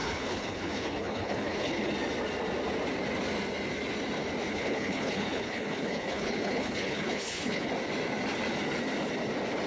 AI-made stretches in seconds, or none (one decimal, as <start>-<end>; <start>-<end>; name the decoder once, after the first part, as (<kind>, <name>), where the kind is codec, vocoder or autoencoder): 0.0-1.9 (codec, HILCodec); 4.5-7.7